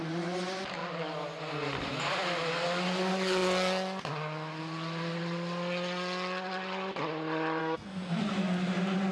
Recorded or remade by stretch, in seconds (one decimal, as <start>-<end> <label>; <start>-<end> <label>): 0.0-7.6 recorded; 7.6-8.2 remade; 8.2-9.1 recorded